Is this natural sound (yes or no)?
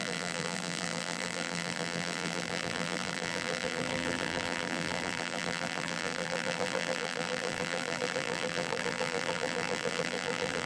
no